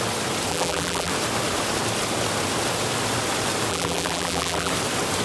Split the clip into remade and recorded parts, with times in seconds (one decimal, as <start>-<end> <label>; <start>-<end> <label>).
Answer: 0.0-0.5 recorded; 0.5-1.1 remade; 1.1-3.7 recorded; 3.7-4.7 remade; 4.7-5.2 recorded